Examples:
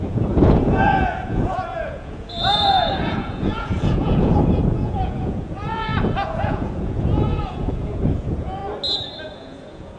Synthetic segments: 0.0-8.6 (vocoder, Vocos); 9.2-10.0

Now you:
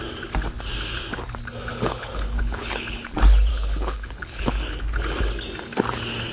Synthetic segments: 1.7-3.0 (codec, HILCodec); 3.5-4.8

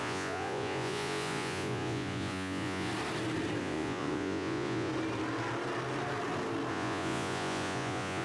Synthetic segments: 0.0-2.9 (vocoder, Vocos); 3.6-4.9; 6.7-8.2